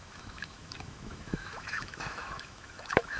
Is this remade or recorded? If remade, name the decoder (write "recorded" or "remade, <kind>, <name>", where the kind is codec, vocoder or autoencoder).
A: remade, autoencoder, DAC-VAE